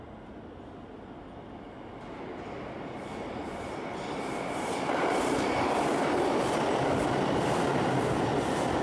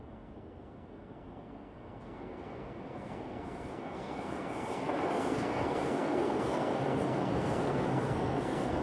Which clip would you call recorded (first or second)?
first